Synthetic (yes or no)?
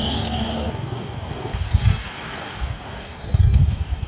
yes